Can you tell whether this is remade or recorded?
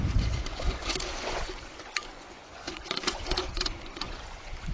remade